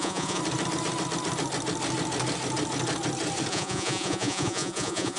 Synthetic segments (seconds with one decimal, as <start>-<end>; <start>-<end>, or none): 0.0-0.4; 3.5-5.2